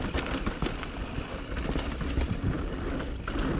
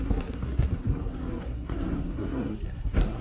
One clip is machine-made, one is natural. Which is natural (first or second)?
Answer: first